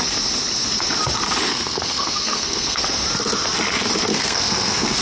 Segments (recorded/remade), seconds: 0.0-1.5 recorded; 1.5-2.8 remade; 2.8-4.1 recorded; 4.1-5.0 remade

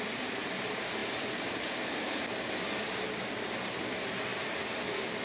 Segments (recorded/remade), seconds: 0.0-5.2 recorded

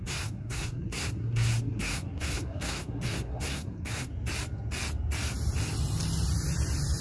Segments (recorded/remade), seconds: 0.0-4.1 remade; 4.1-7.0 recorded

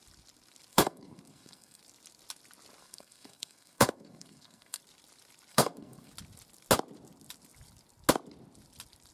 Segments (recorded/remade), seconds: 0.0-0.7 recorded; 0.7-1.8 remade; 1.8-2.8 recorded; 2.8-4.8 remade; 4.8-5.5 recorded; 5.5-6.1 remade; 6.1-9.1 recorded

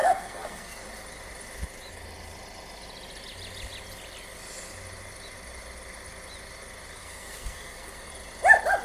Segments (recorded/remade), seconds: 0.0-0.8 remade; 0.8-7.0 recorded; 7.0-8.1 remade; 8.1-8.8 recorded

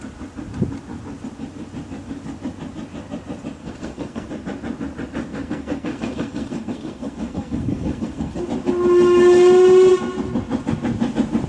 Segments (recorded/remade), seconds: 0.0-3.6 recorded; 3.6-4.3 remade; 4.3-5.3 recorded; 5.3-8.4 remade; 8.4-11.5 recorded